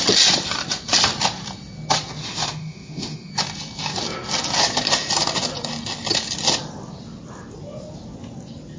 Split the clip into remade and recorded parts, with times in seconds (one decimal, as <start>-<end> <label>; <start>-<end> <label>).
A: 0.0-2.2 recorded; 2.2-3.3 remade; 3.3-8.8 recorded